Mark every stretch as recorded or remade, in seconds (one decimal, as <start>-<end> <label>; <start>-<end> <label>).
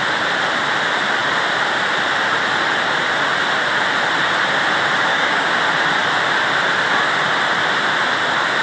0.0-5.1 recorded; 5.1-5.6 remade; 5.6-8.6 recorded